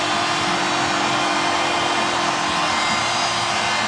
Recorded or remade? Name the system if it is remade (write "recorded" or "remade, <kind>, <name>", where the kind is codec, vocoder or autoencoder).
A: recorded